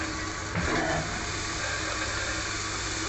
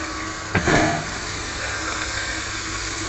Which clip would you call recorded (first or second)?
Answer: first